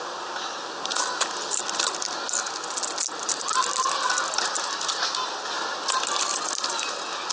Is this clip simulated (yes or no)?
no